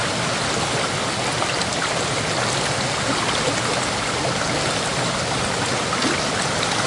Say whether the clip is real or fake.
real